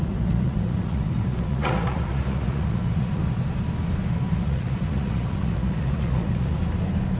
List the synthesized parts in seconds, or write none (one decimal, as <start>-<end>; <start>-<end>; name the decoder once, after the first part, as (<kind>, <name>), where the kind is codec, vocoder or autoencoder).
0.0-3.2 (vocoder, Vocos); 4.3-6.6